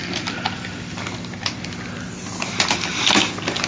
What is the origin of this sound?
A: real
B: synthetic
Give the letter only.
A